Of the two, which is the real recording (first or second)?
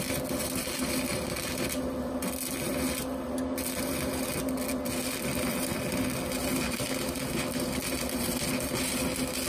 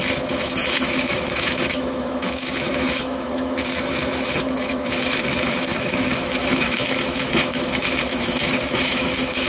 first